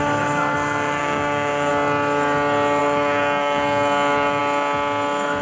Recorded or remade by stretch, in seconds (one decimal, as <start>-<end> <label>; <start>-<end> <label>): 0.0-1.0 recorded; 1.0-1.7 remade; 1.7-2.8 recorded; 2.8-4.4 remade; 4.4-5.4 recorded